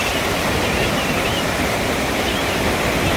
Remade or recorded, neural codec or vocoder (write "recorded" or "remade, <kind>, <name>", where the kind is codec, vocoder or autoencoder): remade, vocoder, BigVGAN v2